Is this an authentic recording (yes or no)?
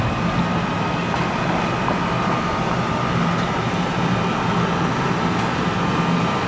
yes